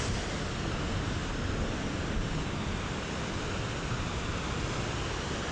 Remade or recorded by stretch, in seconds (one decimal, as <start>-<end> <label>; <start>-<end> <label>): 0.0-5.5 recorded